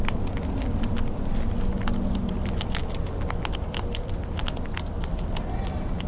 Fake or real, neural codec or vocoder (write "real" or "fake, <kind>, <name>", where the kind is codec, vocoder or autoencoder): real